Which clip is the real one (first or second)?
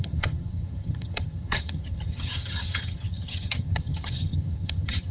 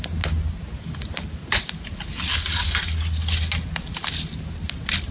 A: second